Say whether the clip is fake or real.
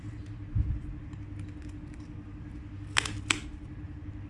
real